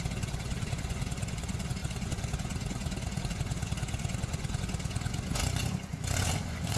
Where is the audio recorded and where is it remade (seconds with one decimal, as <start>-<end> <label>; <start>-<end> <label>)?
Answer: 0.0-6.8 remade